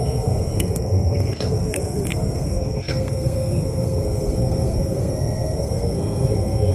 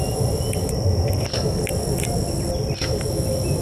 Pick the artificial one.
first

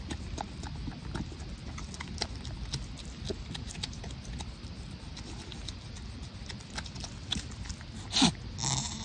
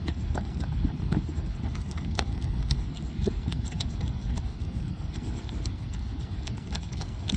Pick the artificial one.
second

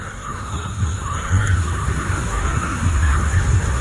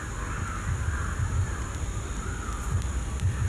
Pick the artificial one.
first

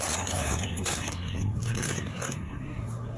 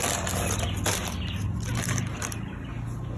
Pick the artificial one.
first